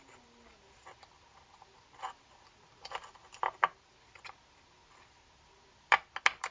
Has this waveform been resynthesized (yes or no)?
no